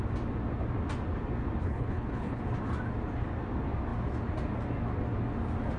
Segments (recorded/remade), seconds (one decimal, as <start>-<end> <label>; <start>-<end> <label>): 0.0-1.6 recorded; 1.6-2.4 remade; 2.4-5.8 recorded